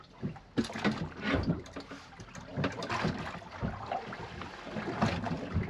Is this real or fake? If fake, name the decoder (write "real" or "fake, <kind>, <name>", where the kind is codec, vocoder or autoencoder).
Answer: real